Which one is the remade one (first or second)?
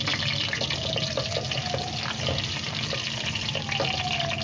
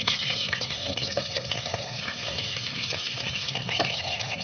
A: second